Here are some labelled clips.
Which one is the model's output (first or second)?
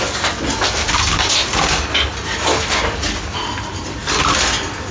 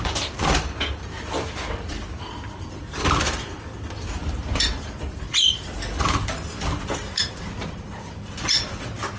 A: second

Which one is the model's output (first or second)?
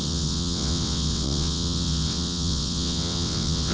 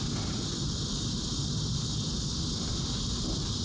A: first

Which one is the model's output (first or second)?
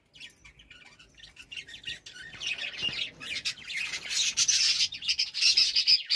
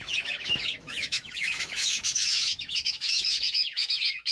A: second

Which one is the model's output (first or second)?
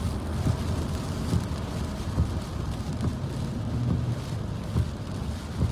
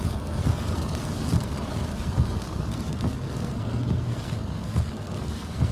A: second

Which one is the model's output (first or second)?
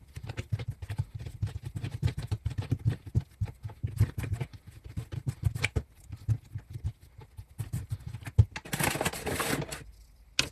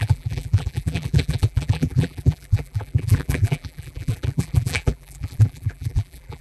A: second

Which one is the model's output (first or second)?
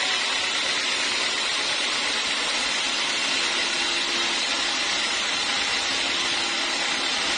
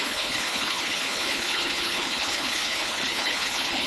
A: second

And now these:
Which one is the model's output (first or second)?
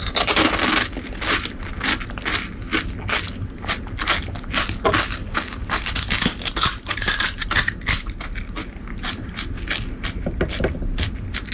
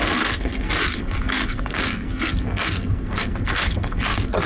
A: second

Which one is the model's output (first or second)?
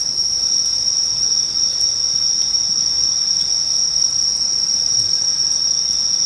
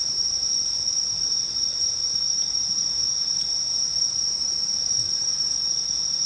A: second